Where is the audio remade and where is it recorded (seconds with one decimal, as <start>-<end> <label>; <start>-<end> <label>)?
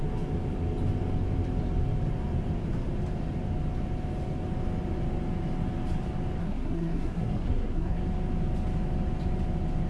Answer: 0.0-6.4 recorded; 6.4-8.0 remade; 8.0-9.9 recorded